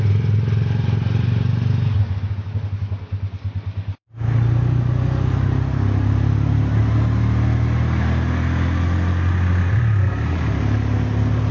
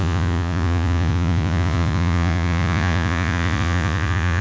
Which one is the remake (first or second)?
second